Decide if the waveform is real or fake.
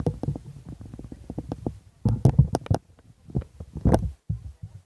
real